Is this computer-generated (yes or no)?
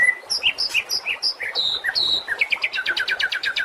no